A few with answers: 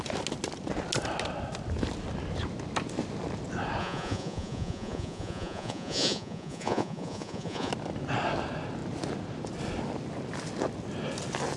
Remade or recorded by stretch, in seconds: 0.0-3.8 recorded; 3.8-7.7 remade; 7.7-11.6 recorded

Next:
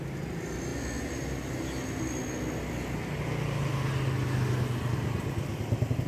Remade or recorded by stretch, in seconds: 0.0-6.1 recorded

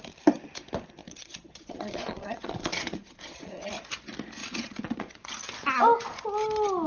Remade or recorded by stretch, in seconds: 0.0-1.0 recorded; 1.0-3.7 remade; 3.7-4.4 recorded; 4.4-5.3 remade; 5.3-6.9 recorded

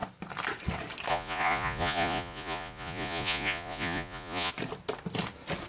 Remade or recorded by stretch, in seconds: 0.0-1.1 recorded; 1.1-4.5 remade; 4.5-5.7 recorded

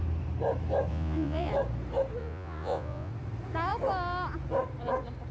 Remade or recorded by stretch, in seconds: 0.0-0.9 recorded; 0.9-1.5 remade; 1.5-2.2 recorded; 2.2-3.1 remade; 3.1-5.3 recorded

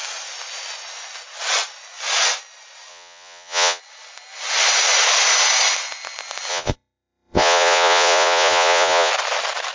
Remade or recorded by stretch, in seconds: 0.0-2.9 recorded; 2.9-3.8 remade; 3.8-6.5 recorded; 6.5-9.1 remade; 9.1-9.7 recorded